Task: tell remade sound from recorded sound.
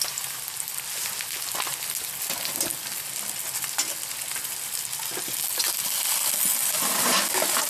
recorded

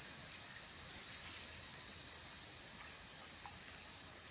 recorded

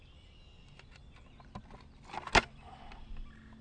recorded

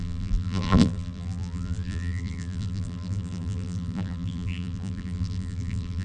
remade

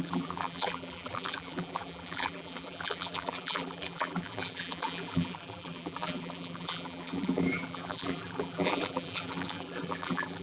remade